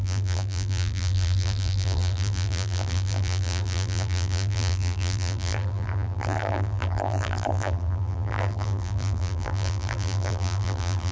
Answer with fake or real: fake